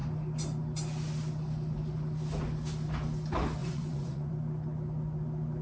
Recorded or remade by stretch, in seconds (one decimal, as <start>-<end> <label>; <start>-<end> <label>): 0.0-3.6 recorded; 3.6-4.3 remade; 4.3-5.6 recorded